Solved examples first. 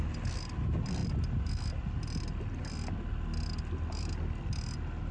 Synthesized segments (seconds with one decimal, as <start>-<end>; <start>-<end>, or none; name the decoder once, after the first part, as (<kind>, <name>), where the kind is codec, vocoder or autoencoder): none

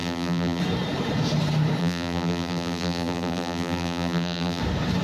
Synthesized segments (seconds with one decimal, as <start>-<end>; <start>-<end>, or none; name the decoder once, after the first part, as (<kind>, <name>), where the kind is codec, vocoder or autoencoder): 0.0-0.6 (vocoder, BigVGAN v2); 1.8-4.6

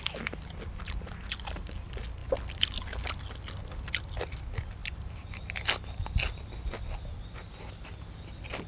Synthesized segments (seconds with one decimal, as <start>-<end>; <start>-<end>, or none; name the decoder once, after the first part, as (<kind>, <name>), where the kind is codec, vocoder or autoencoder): none

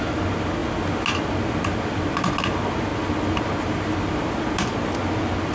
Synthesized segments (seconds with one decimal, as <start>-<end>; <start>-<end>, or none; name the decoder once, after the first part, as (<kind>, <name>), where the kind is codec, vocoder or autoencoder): none

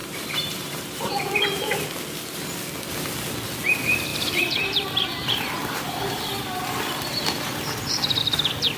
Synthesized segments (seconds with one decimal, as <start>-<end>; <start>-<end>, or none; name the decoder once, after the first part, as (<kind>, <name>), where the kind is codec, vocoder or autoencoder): 0.0-1.1 (vocoder, BigVGAN v2); 4.1-8.2

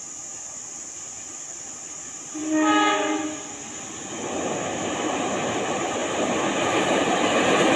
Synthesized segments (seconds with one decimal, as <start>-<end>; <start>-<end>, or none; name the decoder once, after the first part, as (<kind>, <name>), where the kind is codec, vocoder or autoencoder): none